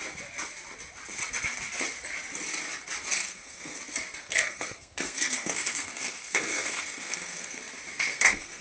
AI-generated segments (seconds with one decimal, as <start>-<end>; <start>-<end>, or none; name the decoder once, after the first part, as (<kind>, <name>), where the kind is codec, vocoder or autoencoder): 3.2-3.8 (codec, SNAC); 4.2-7.6; 8.1-8.6